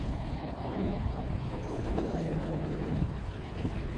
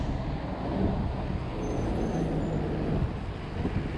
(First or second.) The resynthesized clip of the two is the first